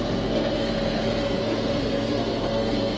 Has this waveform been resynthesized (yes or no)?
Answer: yes